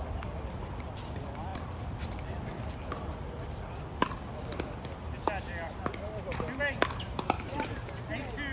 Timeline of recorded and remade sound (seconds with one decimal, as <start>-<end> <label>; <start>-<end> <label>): 0.0-8.5 recorded